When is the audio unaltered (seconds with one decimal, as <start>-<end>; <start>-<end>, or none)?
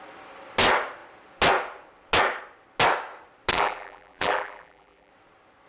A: 0.0-3.5; 5.1-5.7